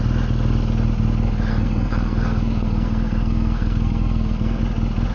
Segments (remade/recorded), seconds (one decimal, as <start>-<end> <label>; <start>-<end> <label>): 0.0-1.5 recorded; 1.5-4.6 remade; 4.6-5.1 recorded